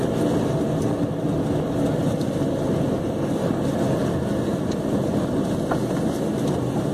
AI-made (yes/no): no